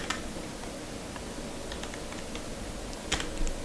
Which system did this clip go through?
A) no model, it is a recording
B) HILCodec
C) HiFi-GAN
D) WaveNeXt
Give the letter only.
A